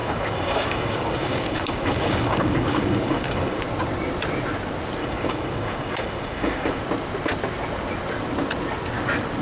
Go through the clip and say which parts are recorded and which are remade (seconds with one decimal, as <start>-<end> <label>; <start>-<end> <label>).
0.0-3.6 remade; 3.6-5.0 recorded; 5.0-6.8 remade; 6.8-9.4 recorded